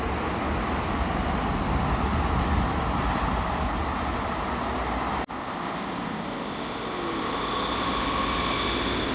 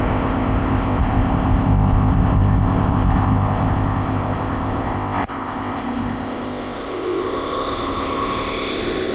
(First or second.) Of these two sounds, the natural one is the first